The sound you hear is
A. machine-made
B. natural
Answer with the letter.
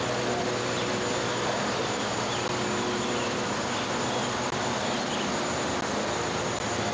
B